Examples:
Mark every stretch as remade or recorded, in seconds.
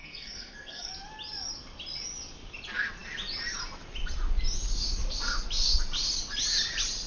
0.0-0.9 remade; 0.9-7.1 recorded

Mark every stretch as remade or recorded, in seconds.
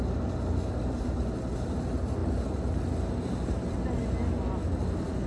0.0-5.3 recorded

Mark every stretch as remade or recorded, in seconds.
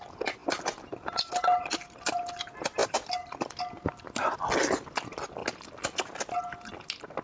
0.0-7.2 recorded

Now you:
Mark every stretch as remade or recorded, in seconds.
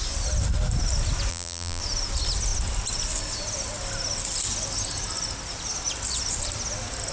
0.0-1.3 recorded; 1.3-1.8 remade; 1.8-7.1 recorded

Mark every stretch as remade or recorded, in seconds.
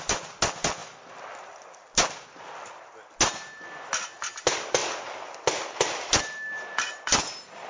0.0-7.7 recorded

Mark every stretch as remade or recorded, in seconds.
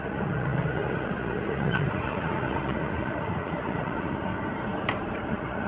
0.0-4.3 remade; 4.3-5.3 recorded; 5.3-5.7 remade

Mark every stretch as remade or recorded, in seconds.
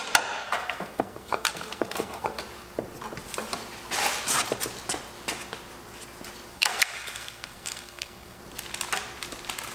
0.0-0.4 recorded; 0.4-2.4 remade; 2.4-6.5 recorded; 6.5-8.4 remade; 8.4-9.7 recorded